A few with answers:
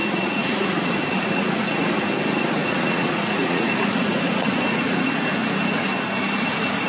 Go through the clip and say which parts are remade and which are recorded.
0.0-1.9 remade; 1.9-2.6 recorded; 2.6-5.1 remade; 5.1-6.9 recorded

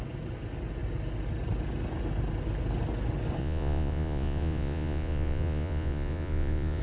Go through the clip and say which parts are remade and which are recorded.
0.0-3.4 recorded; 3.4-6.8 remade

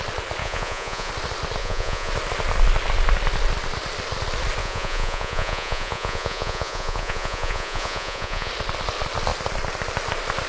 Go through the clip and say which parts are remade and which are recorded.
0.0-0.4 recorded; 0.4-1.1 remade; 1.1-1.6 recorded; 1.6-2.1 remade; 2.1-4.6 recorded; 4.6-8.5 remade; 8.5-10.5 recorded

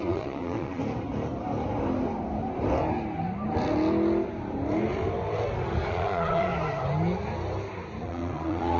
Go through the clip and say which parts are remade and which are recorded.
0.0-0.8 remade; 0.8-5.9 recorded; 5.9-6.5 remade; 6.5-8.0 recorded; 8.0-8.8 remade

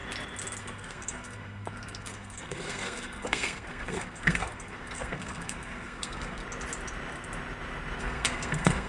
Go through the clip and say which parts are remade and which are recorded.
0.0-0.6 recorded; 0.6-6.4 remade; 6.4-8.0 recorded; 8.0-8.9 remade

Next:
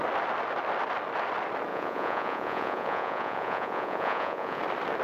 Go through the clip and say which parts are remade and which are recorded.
0.0-1.7 recorded; 1.7-4.6 remade; 4.6-5.0 recorded

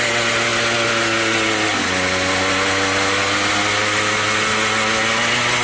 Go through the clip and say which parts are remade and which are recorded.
0.0-5.6 recorded